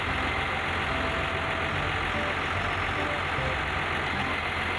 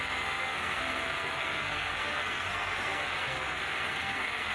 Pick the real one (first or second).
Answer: first